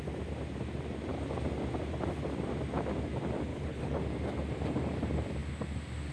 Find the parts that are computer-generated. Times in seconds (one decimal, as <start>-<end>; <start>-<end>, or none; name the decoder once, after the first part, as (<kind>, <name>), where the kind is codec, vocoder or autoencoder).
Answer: 3.5-4.0 (codec, HILCodec)